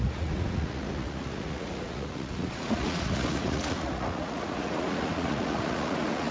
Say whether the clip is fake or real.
fake